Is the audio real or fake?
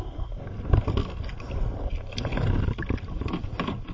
real